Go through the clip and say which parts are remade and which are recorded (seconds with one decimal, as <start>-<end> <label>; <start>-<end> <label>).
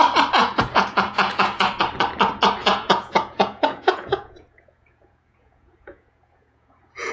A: 0.0-0.4 recorded; 0.4-1.7 remade; 1.7-2.6 recorded; 2.6-7.1 remade